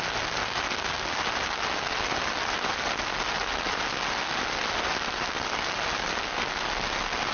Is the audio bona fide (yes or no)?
yes